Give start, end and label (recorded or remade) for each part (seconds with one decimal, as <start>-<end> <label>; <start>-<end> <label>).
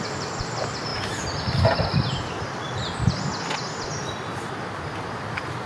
0.0-5.7 recorded